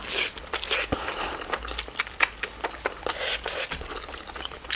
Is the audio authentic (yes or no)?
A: yes